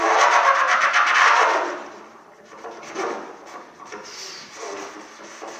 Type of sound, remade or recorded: recorded